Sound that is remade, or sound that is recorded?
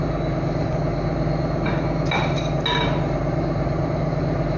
recorded